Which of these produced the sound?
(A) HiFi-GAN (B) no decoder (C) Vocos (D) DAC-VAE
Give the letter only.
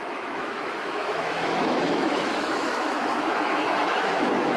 D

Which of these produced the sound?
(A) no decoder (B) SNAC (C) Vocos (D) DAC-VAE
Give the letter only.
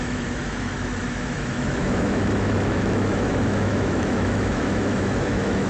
D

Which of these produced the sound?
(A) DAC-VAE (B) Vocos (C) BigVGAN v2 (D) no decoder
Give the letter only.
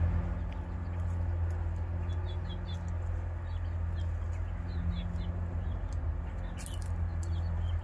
D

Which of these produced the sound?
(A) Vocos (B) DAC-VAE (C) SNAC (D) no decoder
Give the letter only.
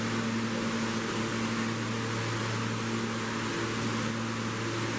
D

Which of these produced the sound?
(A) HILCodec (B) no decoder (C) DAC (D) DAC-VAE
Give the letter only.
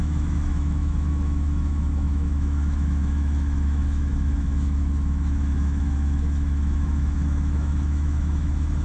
D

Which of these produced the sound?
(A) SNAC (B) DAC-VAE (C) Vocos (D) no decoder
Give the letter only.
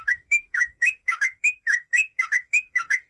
B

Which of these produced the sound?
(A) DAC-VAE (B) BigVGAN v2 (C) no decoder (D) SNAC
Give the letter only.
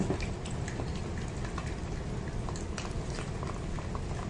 C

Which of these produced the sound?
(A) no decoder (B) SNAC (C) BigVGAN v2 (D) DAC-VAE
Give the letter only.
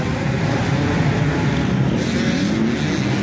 A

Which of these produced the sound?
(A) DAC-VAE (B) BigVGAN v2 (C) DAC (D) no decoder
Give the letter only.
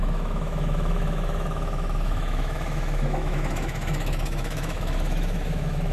A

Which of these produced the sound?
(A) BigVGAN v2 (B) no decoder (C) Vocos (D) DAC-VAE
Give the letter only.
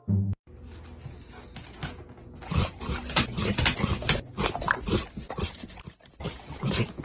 B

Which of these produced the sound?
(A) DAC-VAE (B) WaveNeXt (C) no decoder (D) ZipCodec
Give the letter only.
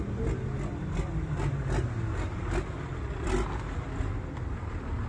C